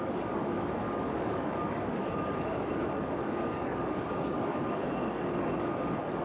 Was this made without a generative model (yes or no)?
no